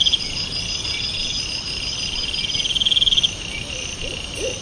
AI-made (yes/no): no